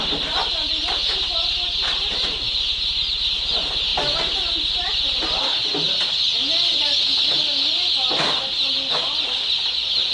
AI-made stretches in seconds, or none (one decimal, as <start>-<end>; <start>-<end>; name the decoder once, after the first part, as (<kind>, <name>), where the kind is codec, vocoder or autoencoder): none